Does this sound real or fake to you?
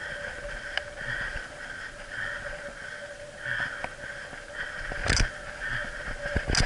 real